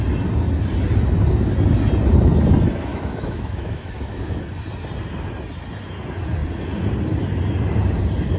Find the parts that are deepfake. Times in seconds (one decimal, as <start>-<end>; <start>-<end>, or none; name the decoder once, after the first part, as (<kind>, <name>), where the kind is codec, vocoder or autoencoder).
2.9-4.4 (autoencoder, DAC-VAE)